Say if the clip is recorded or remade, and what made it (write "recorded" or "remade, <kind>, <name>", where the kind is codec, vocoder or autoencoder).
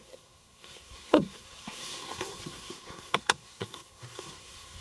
remade, codec, SNAC